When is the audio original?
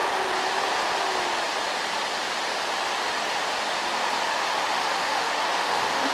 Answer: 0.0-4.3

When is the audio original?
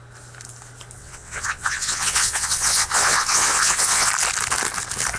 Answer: 0.0-1.0; 4.1-5.2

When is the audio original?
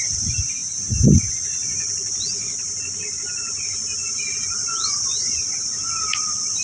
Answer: 0.6-1.3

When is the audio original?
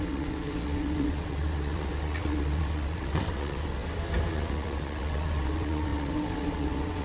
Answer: 3.8-4.3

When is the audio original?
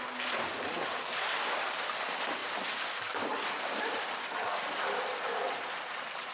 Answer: 0.0-2.4; 5.8-6.3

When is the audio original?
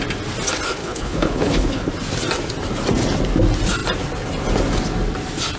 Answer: 0.0-0.8; 1.9-5.6